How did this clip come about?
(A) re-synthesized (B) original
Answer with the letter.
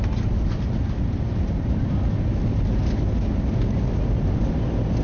B